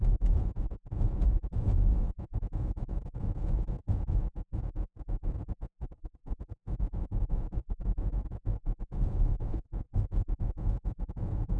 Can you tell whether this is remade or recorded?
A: remade